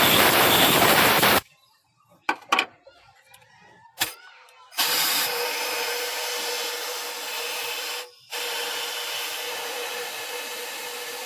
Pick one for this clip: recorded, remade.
remade